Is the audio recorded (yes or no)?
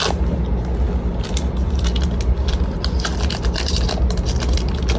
yes